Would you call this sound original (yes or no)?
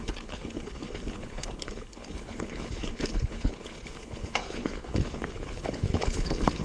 no